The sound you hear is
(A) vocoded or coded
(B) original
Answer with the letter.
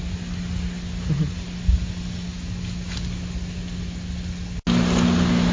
B